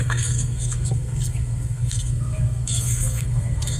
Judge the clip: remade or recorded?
remade